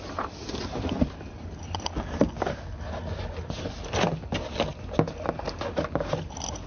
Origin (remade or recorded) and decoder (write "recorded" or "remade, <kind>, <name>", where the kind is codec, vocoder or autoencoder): recorded